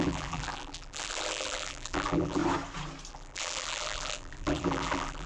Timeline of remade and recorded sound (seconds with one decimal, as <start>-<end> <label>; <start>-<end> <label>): 0.0-2.4 remade; 2.4-3.1 recorded; 3.1-5.3 remade